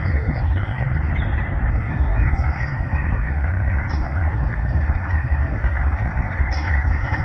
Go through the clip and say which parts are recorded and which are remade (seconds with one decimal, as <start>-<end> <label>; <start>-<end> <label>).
0.0-1.1 remade; 1.1-1.7 recorded; 1.7-7.2 remade